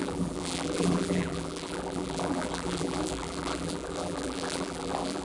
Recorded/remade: remade